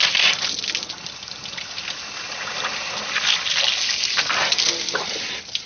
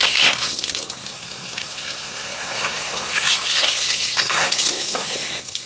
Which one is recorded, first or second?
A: first